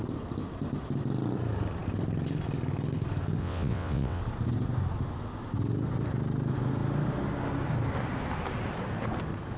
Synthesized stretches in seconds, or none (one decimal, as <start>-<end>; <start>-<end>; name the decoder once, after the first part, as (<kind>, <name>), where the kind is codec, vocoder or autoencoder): 3.4-4.2 (vocoder, WaveNeXt)